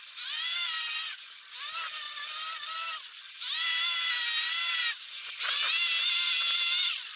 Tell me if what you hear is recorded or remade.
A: remade